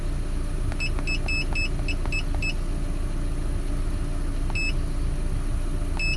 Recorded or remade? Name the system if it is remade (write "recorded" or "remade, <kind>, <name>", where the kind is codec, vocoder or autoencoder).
recorded